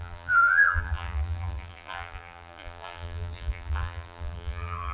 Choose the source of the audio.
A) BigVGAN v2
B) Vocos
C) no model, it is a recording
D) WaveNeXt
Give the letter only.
A